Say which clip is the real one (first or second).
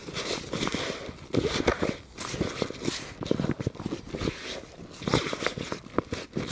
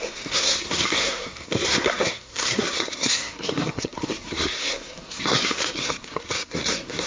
first